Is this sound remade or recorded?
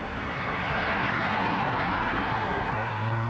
remade